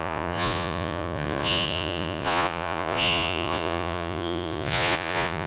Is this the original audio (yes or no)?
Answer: no